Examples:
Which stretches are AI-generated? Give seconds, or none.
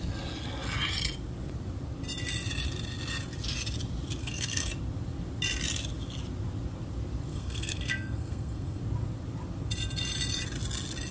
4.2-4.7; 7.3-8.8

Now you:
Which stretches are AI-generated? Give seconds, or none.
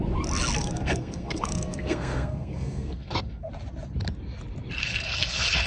0.6-3.5; 4.8-5.7